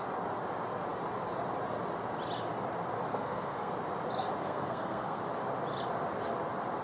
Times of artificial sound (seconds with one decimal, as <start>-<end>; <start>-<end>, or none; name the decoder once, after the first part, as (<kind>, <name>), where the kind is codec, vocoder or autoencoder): 3.1-3.7 (codec, SNAC); 4.4-5.2